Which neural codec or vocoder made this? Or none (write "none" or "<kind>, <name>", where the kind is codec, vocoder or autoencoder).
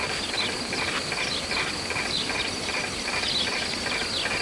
none